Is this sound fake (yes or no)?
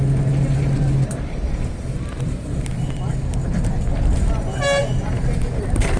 no